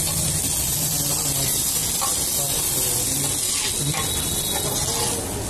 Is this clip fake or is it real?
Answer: real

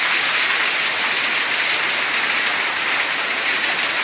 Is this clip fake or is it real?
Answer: real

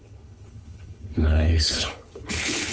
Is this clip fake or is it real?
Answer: fake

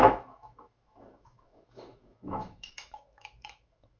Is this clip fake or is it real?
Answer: fake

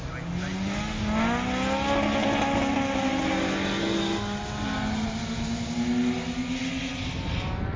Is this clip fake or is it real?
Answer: real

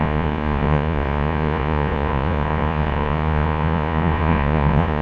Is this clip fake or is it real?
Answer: fake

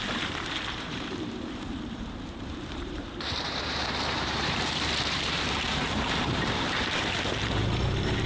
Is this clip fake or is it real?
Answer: fake